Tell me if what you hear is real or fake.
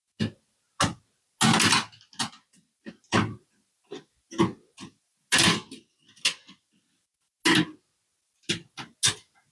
real